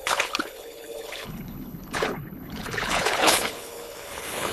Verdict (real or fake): fake